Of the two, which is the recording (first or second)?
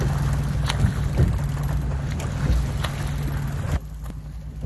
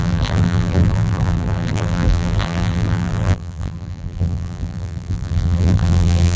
first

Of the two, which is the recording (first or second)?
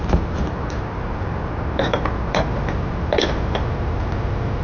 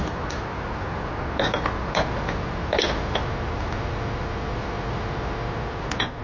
second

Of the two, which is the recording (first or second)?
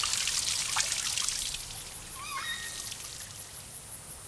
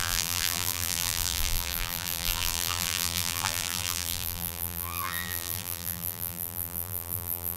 first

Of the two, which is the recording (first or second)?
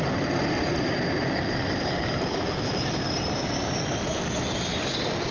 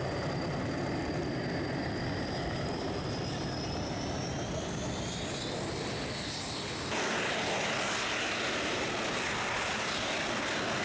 second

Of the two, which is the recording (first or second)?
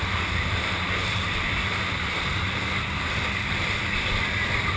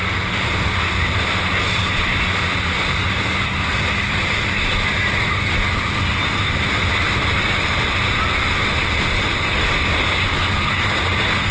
second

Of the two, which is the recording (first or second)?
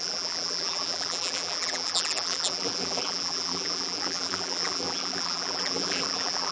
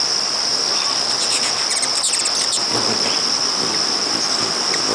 second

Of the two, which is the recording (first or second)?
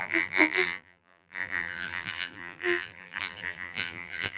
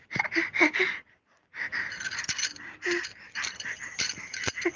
second